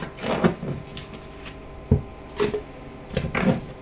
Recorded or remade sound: recorded